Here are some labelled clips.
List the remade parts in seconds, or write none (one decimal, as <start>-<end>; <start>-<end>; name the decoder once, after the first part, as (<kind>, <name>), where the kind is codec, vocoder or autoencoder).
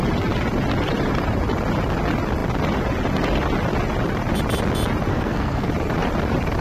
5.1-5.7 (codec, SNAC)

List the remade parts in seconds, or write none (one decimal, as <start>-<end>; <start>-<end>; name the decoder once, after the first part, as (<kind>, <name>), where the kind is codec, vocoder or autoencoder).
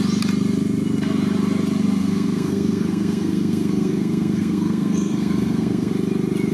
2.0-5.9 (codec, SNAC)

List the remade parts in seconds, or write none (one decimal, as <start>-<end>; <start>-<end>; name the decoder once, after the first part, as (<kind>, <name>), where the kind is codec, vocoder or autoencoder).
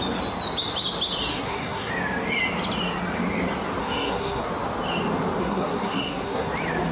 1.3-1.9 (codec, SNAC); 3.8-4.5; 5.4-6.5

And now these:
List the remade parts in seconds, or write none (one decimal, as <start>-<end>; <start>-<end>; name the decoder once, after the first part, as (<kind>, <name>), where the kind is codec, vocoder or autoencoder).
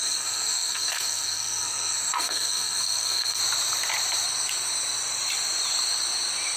0.0-3.4 (codec, SNAC)